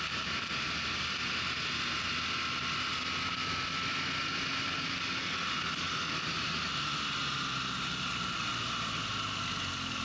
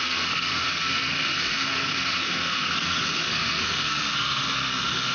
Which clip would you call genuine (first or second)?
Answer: first